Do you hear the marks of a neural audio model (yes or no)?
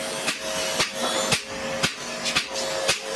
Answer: no